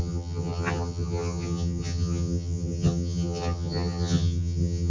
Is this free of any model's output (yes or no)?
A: no